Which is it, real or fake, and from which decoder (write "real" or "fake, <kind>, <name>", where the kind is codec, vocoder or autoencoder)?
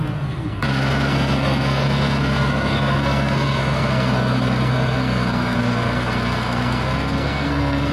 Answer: fake, codec, SNAC